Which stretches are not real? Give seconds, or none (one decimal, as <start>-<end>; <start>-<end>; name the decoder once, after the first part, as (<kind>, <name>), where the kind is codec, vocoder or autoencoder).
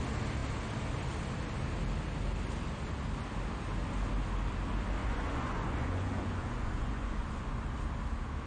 5.0-7.6 (vocoder, Vocos)